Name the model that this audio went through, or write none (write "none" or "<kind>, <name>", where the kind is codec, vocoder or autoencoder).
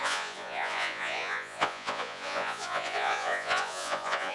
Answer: vocoder, Vocos